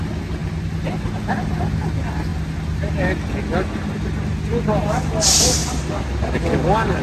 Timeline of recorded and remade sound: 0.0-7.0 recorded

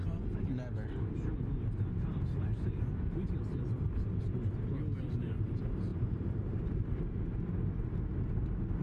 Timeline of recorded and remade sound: 0.0-5.9 recorded; 5.9-6.6 remade; 6.6-8.8 recorded

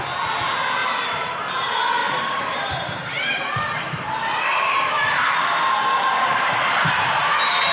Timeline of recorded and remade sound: 0.0-0.8 recorded; 0.8-1.4 remade; 1.4-2.0 recorded; 2.0-6.4 remade; 6.4-7.7 recorded

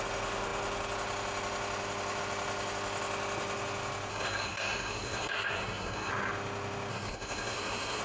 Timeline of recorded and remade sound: 0.0-4.1 recorded; 4.1-6.1 remade; 6.1-6.9 recorded; 6.9-8.0 remade

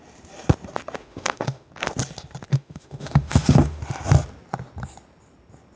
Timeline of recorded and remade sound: 0.0-1.0 recorded; 1.0-1.7 remade; 1.7-2.5 recorded; 2.5-3.8 remade; 3.8-5.8 recorded

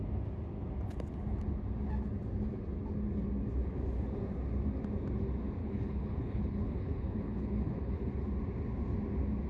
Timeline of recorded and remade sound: 0.0-5.6 recorded; 5.6-8.1 remade; 8.1-9.5 recorded

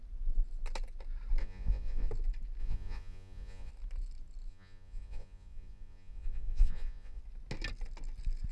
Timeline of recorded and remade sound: 0.0-1.4 recorded; 1.4-2.1 remade; 2.1-2.6 recorded; 2.6-3.7 remade; 3.7-4.5 recorded; 4.5-7.2 remade; 7.2-8.5 recorded